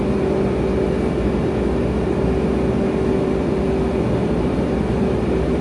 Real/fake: real